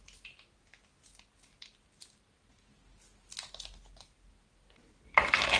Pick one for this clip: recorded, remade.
recorded